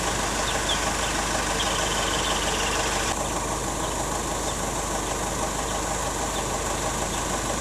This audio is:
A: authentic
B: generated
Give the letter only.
A